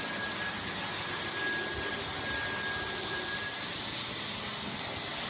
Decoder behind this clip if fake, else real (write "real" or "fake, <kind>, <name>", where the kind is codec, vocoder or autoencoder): real